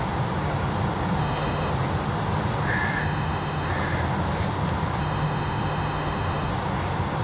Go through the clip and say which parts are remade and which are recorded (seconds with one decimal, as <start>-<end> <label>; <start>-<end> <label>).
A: 0.0-1.2 recorded; 1.2-1.7 remade; 1.7-3.0 recorded; 3.0-3.7 remade; 3.7-5.0 recorded; 5.0-6.5 remade; 6.5-7.2 recorded